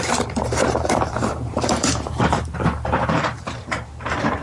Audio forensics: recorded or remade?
remade